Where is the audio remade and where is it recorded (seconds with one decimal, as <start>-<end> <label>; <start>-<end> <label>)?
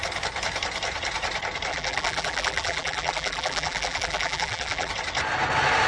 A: 0.0-1.7 recorded; 1.7-4.9 remade; 4.9-5.9 recorded